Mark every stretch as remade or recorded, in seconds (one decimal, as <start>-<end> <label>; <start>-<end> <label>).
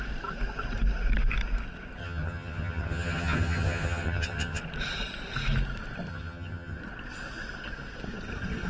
0.0-2.0 recorded; 2.0-4.6 remade; 4.6-6.1 recorded; 6.1-6.8 remade; 6.8-8.7 recorded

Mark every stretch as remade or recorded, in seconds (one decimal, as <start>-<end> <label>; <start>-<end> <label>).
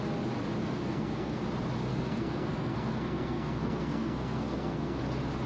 0.0-0.6 recorded; 0.6-1.4 remade; 1.4-1.9 recorded; 1.9-5.0 remade; 5.0-5.5 recorded